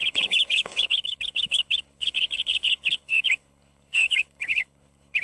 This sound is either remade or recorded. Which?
remade